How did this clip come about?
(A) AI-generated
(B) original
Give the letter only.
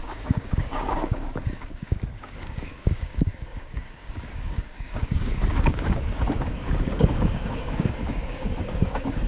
A